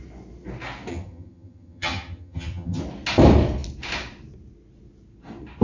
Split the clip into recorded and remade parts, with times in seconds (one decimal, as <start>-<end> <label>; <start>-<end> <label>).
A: 0.0-0.9 recorded; 0.9-2.8 remade; 2.8-5.6 recorded